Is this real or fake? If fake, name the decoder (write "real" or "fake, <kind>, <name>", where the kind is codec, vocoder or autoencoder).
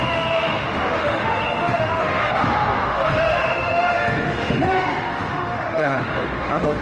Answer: fake, autoencoder, DAC-VAE